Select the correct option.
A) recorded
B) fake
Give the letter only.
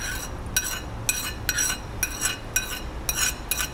A